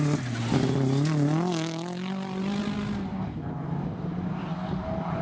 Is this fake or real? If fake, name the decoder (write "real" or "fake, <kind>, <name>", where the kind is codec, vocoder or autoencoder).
real